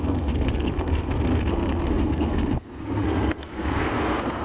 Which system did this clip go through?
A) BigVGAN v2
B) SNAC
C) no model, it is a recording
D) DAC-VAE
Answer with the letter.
B